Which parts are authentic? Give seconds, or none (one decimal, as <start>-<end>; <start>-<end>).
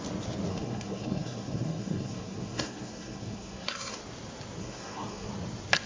0.0-0.5; 4.0-4.6; 5.3-5.9